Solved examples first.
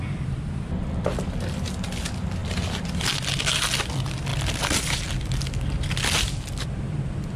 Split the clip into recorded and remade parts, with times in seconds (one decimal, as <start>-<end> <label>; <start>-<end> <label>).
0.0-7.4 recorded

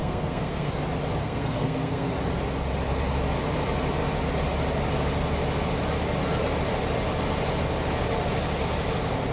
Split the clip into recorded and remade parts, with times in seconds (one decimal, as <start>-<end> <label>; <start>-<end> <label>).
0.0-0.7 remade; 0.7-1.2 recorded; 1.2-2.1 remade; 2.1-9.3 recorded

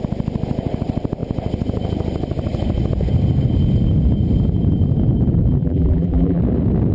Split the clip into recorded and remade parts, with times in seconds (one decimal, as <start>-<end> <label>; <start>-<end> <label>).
0.0-5.6 recorded; 5.6-6.4 remade; 6.4-6.9 recorded

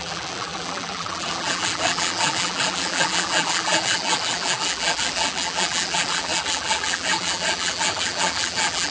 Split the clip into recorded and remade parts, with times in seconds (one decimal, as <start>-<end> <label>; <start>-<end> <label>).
0.0-8.9 remade

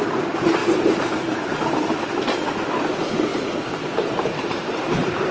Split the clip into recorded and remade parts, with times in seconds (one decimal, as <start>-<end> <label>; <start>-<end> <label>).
0.0-0.6 recorded; 0.6-2.1 remade; 2.1-3.3 recorded; 3.3-5.3 remade

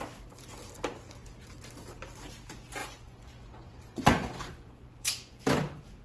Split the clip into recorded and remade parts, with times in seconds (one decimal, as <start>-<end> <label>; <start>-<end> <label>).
0.0-2.8 recorded; 2.8-5.4 remade; 5.4-6.0 recorded